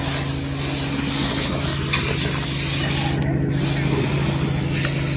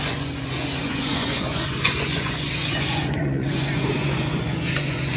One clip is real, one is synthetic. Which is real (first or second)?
first